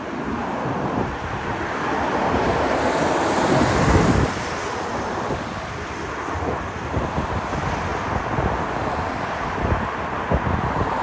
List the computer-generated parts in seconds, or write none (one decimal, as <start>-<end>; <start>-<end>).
0.0-7.9; 9.1-11.0